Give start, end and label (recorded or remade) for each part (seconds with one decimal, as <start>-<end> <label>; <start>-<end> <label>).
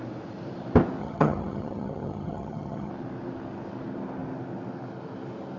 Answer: 0.0-1.0 recorded; 1.0-2.9 remade; 2.9-5.6 recorded